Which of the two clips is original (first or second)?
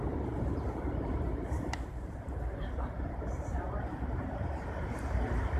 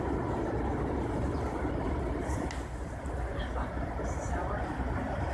second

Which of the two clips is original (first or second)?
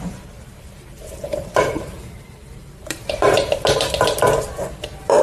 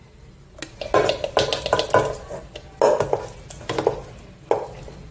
second